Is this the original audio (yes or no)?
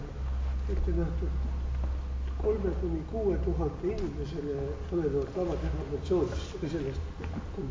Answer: yes